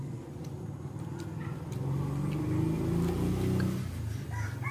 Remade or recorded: recorded